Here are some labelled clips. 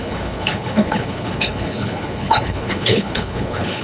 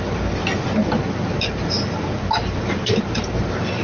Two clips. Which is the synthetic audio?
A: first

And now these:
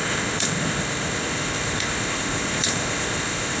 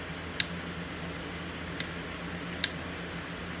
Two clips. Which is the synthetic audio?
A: first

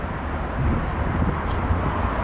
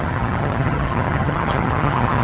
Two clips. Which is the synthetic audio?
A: second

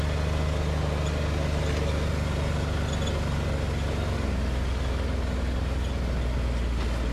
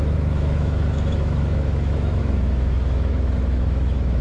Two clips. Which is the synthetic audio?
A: second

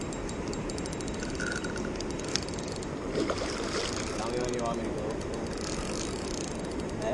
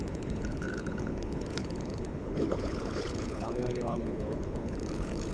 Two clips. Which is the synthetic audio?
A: second